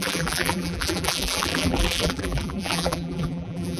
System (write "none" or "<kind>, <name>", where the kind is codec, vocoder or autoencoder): vocoder, BigVGAN v2